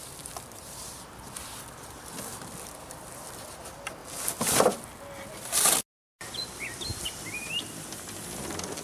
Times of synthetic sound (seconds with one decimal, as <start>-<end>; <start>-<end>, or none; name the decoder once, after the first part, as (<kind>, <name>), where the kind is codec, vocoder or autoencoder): 6.9-7.5 (vocoder, BigVGAN v2)

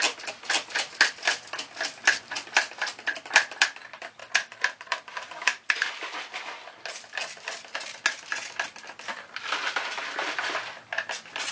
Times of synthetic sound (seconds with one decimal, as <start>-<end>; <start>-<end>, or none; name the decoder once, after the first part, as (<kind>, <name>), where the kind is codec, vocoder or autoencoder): none

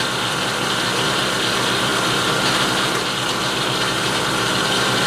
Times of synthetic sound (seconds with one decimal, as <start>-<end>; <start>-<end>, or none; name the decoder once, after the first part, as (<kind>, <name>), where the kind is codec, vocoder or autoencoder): 0.0-5.1 (vocoder, BigVGAN v2)